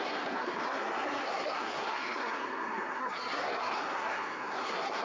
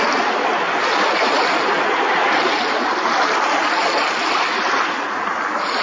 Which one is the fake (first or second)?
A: first